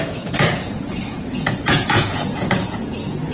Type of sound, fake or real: fake